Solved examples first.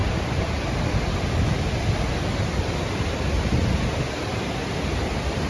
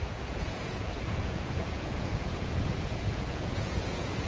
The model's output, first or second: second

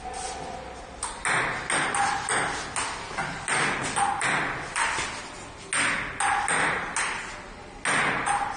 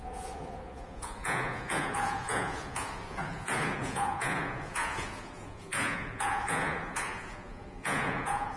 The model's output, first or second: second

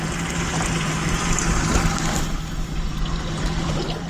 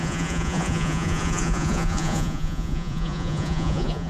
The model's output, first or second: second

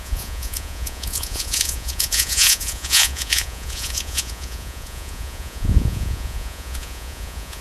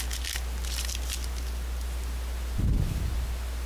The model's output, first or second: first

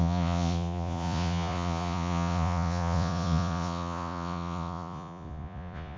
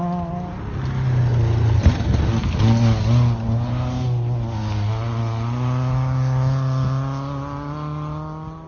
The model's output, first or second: first